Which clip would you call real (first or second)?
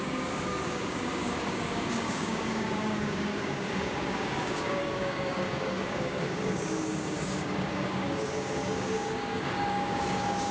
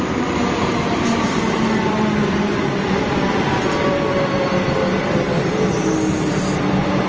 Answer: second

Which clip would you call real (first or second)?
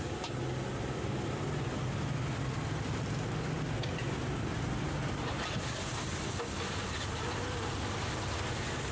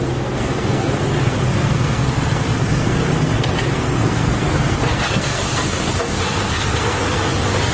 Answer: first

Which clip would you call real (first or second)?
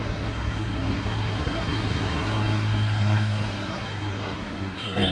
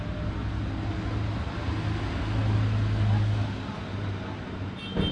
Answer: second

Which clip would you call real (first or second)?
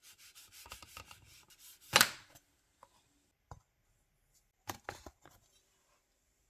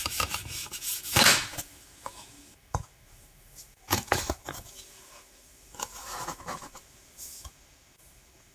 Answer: first